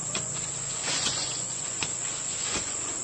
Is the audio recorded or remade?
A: remade